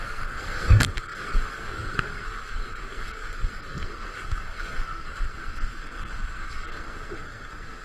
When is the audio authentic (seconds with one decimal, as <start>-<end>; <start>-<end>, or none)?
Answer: none